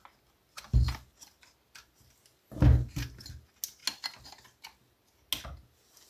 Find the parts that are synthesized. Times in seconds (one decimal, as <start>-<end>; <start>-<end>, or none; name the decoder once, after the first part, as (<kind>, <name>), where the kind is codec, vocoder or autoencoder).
none